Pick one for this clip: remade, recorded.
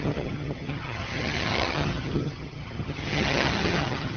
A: remade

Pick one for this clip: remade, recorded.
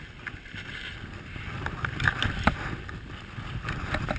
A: recorded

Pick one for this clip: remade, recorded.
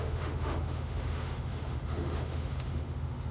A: remade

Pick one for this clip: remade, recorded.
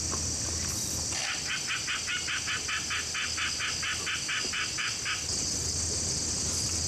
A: recorded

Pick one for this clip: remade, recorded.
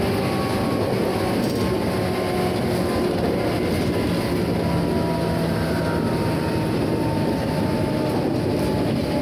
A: recorded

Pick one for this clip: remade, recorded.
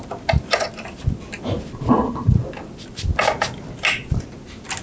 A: recorded